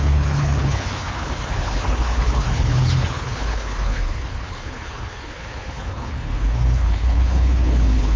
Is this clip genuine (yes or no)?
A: no